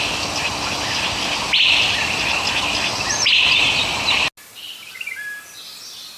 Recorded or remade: recorded